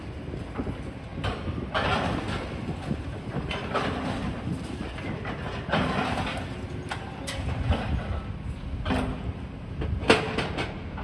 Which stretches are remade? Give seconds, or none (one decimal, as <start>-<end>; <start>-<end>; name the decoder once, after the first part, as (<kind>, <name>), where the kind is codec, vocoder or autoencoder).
none